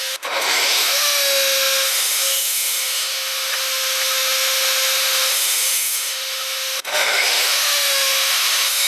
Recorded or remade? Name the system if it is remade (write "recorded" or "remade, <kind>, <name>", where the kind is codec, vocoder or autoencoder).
remade, autoencoder, DAC-VAE